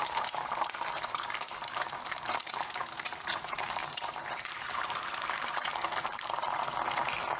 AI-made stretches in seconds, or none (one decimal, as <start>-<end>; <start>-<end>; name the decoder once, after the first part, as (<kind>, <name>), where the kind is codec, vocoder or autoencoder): 0.0-5.7 (vocoder, BigVGAN v2)